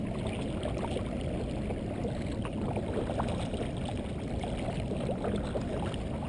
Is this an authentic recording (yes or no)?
yes